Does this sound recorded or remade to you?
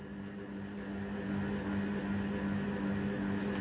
recorded